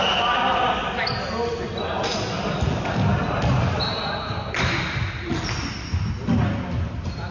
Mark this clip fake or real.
real